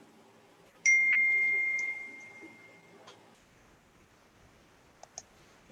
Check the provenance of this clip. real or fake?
real